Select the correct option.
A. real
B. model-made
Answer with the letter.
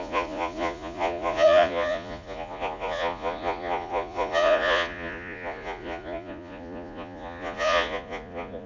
B